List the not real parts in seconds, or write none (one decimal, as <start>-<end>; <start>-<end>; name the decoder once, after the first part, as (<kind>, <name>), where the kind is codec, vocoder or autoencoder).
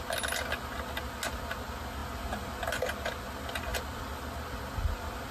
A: none